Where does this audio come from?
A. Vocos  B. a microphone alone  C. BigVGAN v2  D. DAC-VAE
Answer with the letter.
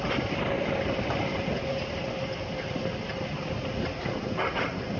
B